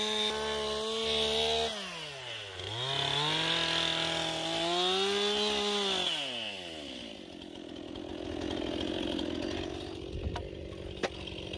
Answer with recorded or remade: recorded